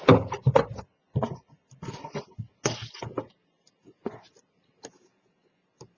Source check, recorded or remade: recorded